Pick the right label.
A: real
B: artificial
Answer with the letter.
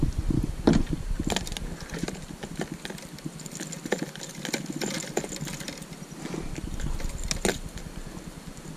A